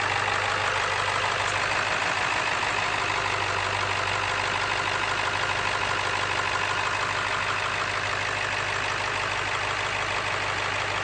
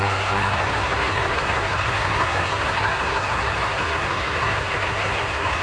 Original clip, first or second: first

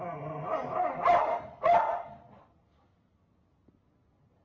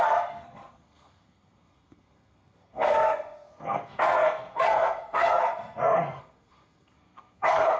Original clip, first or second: first